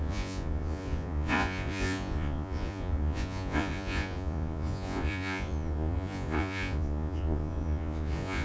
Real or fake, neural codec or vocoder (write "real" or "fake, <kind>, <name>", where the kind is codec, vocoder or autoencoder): fake, vocoder, Vocos